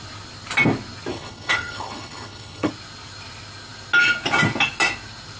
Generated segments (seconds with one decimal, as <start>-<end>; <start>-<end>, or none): 1.1-2.7